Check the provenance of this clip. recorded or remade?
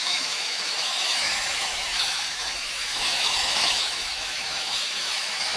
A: remade